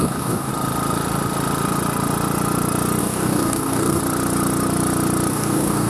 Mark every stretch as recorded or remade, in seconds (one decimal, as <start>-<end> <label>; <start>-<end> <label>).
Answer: 0.0-0.5 remade; 0.5-3.0 recorded; 3.0-4.0 remade; 4.0-5.3 recorded; 5.3-5.9 remade